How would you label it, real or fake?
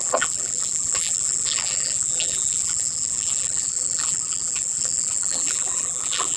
fake